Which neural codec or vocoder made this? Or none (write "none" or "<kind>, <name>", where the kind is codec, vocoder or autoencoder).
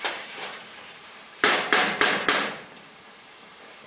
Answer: vocoder, BigVGAN v2